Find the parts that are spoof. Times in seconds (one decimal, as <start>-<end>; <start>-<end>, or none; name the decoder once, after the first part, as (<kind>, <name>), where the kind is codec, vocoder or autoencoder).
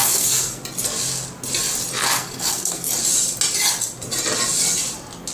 0.0-0.6 (codec, SNAC); 2.0-2.9